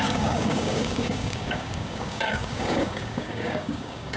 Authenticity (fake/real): fake